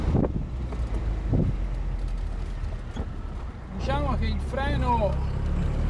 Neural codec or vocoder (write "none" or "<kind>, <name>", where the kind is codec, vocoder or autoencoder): none